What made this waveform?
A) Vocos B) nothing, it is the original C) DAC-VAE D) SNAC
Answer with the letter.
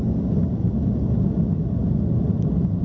B